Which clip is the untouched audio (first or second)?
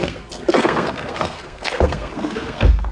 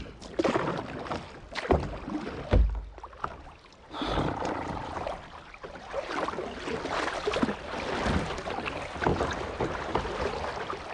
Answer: second